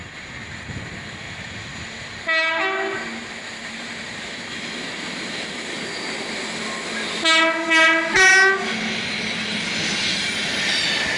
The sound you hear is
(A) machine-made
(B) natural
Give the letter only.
B